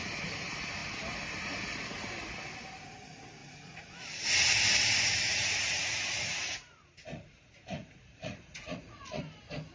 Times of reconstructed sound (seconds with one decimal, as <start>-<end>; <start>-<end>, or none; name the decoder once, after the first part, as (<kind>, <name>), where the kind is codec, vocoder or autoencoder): 3.4-4.0 (vocoder, Vocos); 5.3-9.2